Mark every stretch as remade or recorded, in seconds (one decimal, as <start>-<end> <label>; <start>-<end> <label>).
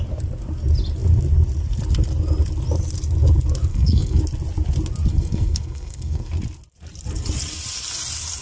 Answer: 0.0-3.7 recorded; 3.7-4.2 remade; 4.2-5.1 recorded; 5.1-6.3 remade; 6.3-8.4 recorded